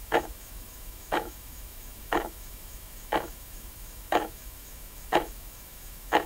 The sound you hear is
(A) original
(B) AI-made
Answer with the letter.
B